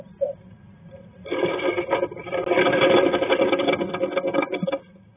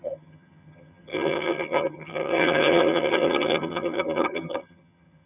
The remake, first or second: second